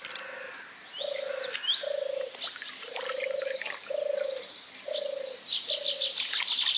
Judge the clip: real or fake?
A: real